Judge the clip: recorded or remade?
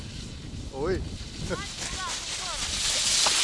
recorded